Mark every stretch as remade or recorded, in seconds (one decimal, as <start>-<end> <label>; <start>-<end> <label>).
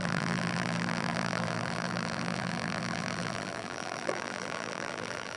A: 0.0-5.4 remade